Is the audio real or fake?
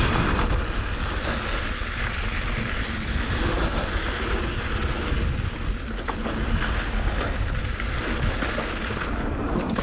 real